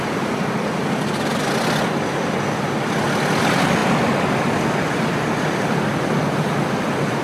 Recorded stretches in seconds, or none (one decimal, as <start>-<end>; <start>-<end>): 0.0-3.8; 5.0-7.2